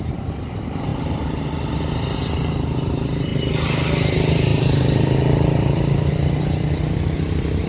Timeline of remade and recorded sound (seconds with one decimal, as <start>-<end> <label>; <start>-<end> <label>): 0.0-0.9 remade; 0.9-1.7 recorded; 1.7-3.3 remade; 3.3-4.0 recorded; 4.0-7.7 remade

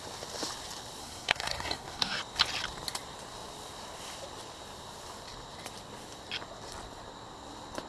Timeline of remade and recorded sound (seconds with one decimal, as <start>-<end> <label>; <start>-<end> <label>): 0.0-1.0 recorded; 1.0-2.2 remade; 2.2-7.9 recorded

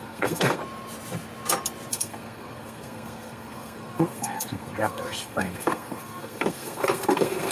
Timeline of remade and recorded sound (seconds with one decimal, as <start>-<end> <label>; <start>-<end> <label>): 0.0-0.6 remade; 0.6-1.9 recorded; 1.9-7.5 remade

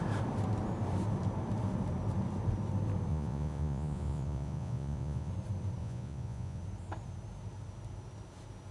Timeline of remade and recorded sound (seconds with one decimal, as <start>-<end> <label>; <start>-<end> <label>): 0.0-3.1 recorded; 3.1-5.3 remade; 5.3-5.8 recorded; 5.8-6.6 remade; 6.6-8.7 recorded

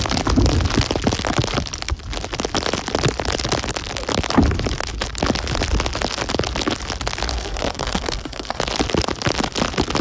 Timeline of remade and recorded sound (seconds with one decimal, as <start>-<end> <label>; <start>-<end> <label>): 0.0-7.3 recorded; 7.3-8.6 remade; 8.6-10.0 recorded

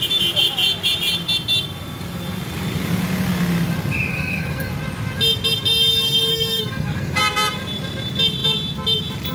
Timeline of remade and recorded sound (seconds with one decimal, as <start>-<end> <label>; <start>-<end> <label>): 0.0-4.1 recorded; 4.1-4.7 remade; 4.7-6.3 recorded; 6.3-7.2 remade; 7.2-9.3 recorded

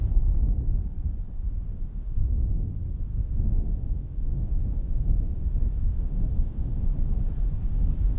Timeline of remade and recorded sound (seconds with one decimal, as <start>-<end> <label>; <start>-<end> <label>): 0.0-1.9 recorded; 1.9-2.7 remade; 2.7-3.1 recorded; 3.1-5.4 remade; 5.4-5.9 recorded; 5.9-6.9 remade; 6.9-8.2 recorded